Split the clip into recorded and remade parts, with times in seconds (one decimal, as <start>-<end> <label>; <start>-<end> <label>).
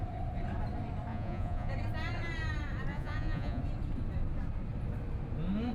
0.0-1.1 recorded; 1.1-1.7 remade; 1.7-2.9 recorded; 2.9-3.6 remade; 3.6-5.7 recorded